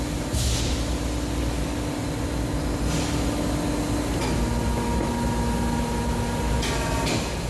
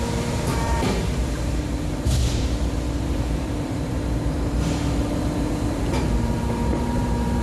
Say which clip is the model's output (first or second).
second